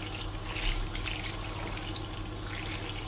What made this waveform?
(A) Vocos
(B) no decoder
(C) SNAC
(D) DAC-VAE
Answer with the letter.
B